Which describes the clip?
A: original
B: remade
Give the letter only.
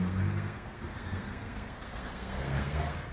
B